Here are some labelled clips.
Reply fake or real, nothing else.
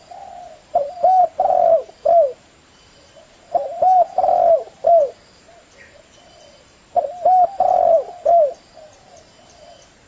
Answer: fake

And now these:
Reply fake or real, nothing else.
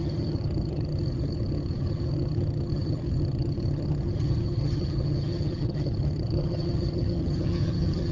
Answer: fake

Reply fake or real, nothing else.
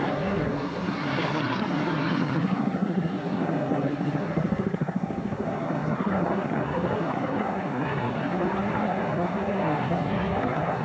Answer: fake